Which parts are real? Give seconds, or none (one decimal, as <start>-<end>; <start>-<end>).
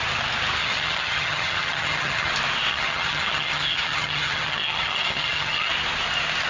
0.0-0.6; 2.3-2.7; 5.7-6.5